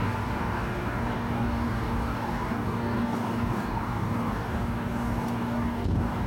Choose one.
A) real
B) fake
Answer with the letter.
B